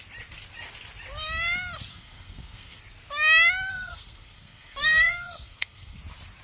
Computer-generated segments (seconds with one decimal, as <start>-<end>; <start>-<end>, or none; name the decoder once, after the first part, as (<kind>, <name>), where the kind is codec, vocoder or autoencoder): 1.9-2.8 (codec, SNAC); 3.7-6.0